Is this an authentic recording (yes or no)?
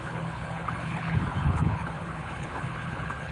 no